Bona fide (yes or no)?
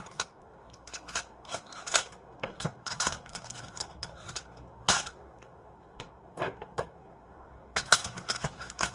no